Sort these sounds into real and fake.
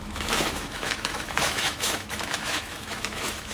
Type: fake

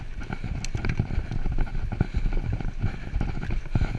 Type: real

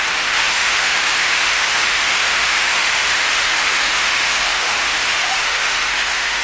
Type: fake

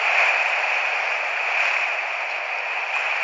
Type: real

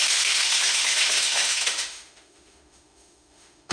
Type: fake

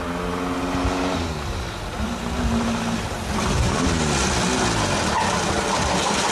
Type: real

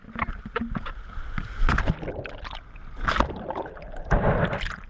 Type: real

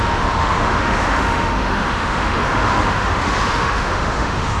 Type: fake